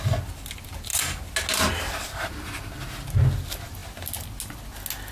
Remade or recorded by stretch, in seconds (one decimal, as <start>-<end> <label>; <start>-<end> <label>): 0.0-5.1 recorded